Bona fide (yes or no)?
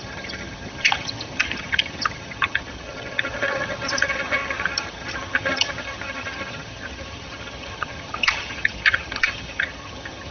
no